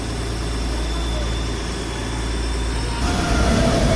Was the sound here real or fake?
real